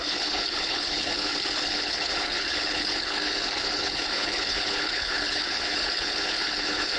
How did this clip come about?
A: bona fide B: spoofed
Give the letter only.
B